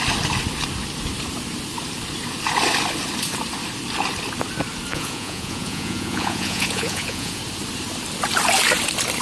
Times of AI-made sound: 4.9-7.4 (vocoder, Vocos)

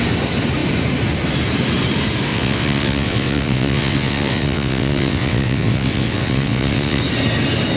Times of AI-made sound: 2.3-7.0 (vocoder, WaveNeXt)

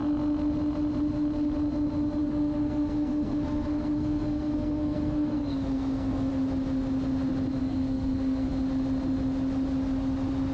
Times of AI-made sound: 2.2-6.3 (codec, SNAC); 7.6-8.5

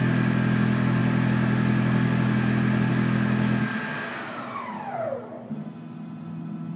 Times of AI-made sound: none

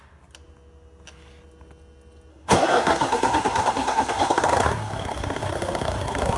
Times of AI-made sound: 2.3-6.4 (codec, SNAC)